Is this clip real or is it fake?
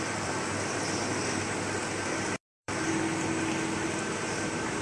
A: fake